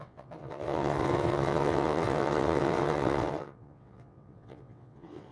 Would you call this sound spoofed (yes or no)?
yes